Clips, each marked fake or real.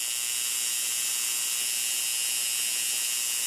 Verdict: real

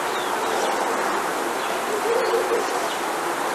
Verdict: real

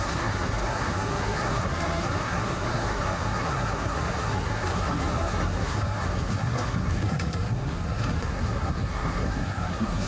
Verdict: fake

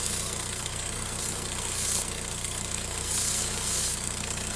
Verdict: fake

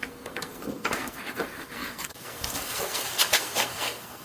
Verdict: fake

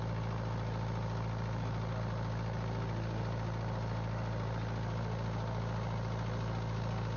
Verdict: real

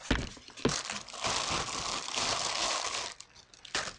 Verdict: real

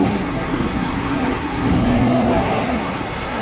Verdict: fake